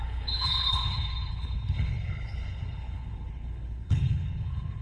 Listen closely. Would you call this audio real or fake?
fake